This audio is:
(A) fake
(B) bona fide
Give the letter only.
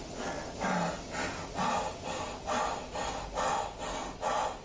B